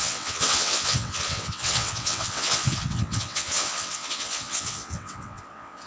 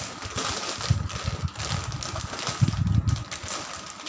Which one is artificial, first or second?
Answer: first